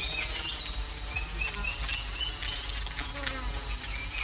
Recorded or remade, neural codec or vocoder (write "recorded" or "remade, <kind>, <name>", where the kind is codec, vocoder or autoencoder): recorded